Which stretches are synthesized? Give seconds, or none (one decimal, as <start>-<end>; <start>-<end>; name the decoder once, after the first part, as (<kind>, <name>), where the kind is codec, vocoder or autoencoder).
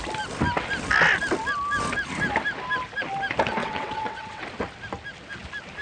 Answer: 3.6-4.4 (vocoder, WaveNeXt)